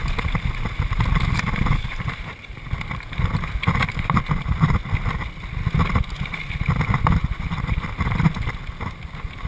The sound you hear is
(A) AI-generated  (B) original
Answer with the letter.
B